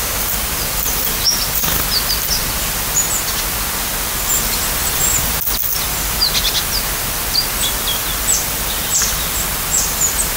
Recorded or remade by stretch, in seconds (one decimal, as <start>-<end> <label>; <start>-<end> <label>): 0.0-10.4 recorded